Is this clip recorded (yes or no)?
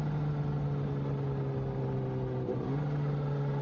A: yes